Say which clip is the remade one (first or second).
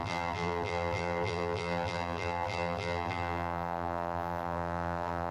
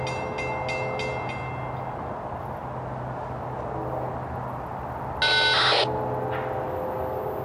first